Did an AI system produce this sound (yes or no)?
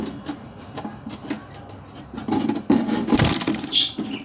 no